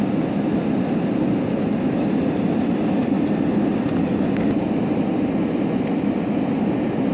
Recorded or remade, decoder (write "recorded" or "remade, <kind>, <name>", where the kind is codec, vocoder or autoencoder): recorded